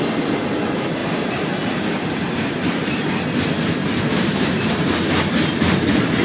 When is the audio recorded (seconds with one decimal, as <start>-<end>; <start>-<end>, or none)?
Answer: 0.0-1.0; 2.8-3.8; 4.9-6.2

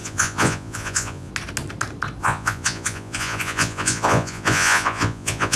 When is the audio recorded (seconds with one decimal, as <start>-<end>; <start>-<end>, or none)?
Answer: 1.3-2.2

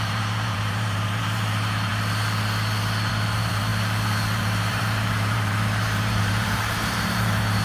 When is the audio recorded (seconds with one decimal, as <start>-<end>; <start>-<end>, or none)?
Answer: 1.9-3.1

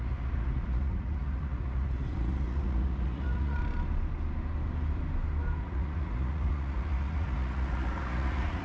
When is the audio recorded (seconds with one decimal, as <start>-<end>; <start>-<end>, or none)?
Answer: 3.6-5.6

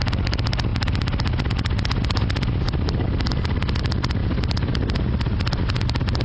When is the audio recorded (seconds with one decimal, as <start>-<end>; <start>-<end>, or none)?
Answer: 0.0-6.2